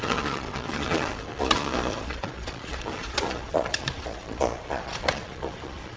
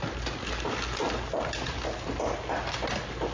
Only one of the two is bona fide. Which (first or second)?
second